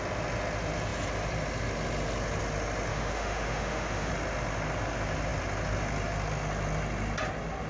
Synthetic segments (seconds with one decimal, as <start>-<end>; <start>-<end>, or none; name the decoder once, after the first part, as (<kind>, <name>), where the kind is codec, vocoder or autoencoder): 2.9-4.1 (autoencoder, DAC-VAE)